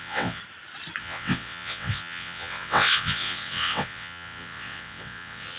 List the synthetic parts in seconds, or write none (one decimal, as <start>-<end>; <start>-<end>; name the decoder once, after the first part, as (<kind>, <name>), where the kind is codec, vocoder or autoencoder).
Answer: 0.0-0.4 (vocoder, WaveNeXt); 1.0-5.6